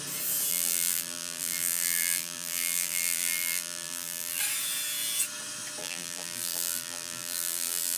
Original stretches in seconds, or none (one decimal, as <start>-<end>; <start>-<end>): 0.0-0.5; 4.4-5.8